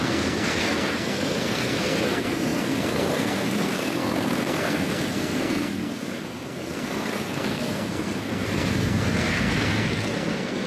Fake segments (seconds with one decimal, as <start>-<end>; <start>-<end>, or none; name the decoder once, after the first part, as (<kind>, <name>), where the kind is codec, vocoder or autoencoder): 0.0-10.7 (codec, SNAC)

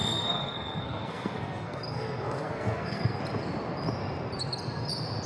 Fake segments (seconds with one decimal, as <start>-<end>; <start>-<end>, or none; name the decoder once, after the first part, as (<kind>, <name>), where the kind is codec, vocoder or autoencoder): 0.0-3.2 (codec, SNAC)

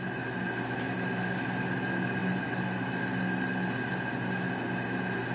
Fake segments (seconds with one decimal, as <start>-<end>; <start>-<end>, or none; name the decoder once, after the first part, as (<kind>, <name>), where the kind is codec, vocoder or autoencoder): none

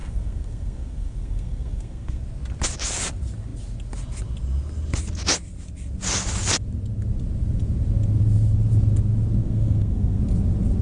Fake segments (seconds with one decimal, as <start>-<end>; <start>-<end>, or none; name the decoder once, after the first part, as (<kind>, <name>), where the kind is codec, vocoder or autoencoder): 0.0-2.2 (codec, SNAC); 9.4-10.2